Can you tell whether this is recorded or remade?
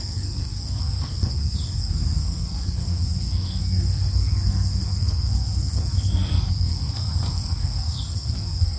remade